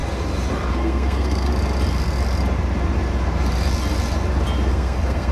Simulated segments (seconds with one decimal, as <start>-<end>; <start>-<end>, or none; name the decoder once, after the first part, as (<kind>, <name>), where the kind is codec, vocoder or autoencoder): 0.7-1.5 (codec, SNAC); 4.7-5.3